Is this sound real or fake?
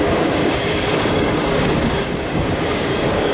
fake